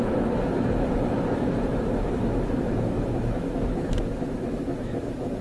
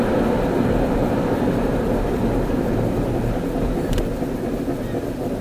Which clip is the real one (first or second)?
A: second